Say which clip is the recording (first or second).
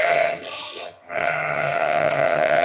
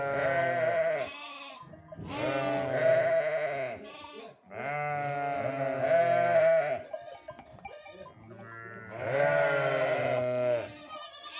second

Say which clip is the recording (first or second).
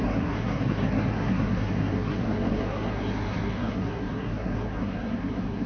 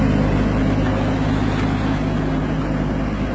second